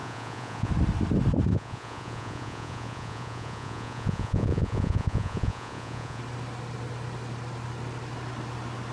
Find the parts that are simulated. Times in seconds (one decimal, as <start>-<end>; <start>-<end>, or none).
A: 0.0-0.7; 1.5-6.2